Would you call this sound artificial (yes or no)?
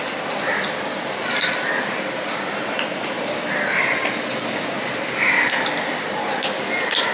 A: no